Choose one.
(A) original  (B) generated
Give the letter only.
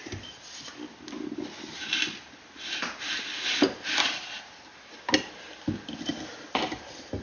A